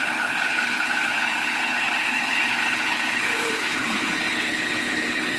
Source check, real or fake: fake